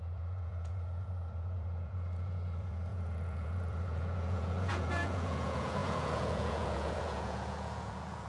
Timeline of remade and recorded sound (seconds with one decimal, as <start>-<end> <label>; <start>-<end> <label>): 0.0-8.3 remade